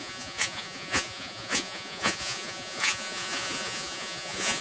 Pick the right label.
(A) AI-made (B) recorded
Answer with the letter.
A